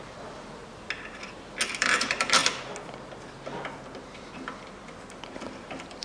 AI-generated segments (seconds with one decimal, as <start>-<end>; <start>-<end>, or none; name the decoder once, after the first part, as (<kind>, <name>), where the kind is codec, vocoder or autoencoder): 0.0-0.6 (vocoder, BigVGAN v2); 1.8-2.4